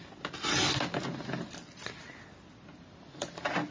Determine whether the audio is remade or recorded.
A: recorded